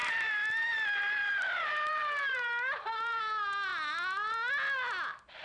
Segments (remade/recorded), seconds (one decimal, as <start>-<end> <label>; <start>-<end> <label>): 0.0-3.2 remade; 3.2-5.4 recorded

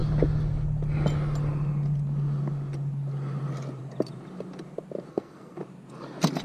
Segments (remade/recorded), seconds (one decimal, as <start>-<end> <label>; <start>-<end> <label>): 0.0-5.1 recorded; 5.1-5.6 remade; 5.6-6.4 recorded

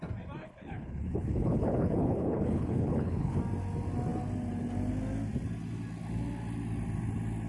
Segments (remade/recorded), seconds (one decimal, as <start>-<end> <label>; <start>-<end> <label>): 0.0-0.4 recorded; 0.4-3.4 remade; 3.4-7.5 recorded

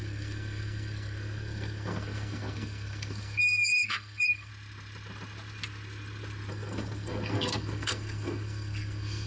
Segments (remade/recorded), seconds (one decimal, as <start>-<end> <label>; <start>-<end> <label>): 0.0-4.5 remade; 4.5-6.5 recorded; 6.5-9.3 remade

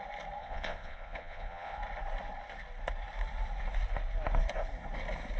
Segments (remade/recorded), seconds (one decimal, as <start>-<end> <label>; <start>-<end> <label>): 0.0-0.4 recorded; 0.4-1.8 remade; 1.8-5.4 recorded

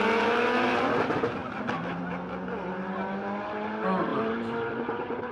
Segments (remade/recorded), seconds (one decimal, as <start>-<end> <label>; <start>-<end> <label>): 0.0-4.1 recorded; 4.1-5.3 remade